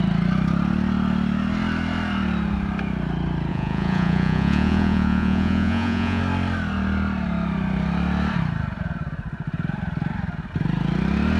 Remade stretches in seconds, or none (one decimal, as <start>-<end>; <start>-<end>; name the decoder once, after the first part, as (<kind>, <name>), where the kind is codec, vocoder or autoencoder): 3.5-6.2 (vocoder, Vocos)

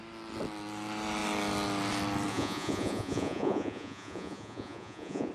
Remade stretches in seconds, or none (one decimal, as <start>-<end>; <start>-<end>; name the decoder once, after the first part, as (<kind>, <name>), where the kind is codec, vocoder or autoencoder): 2.3-5.3 (vocoder, Vocos)

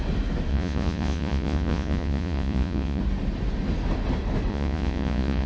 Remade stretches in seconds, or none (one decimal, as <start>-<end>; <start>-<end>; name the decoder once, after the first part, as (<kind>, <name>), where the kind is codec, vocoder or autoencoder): 0.5-3.0 (vocoder, Vocos); 4.5-5.5

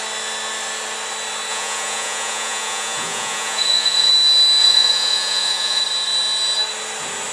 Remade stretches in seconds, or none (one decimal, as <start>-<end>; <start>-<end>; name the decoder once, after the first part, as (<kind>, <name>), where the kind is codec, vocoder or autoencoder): 1.5-4.1 (vocoder, Vocos); 4.6-5.8

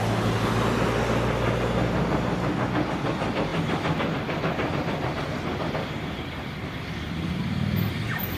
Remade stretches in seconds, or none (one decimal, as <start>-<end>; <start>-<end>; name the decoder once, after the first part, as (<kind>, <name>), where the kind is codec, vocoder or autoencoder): 3.5-8.4 (vocoder, BigVGAN v2)

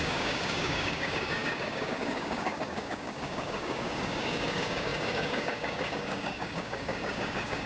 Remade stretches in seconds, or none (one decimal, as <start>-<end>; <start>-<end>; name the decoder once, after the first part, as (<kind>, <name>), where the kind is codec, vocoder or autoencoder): 0.0-7.7 (codec, DAC)

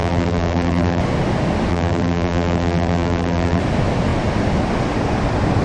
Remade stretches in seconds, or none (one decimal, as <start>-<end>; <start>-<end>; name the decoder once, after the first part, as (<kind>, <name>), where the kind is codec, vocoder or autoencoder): 0.0-1.0 (vocoder, BigVGAN v2); 1.7-3.6